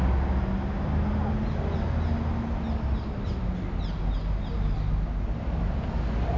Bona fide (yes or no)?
yes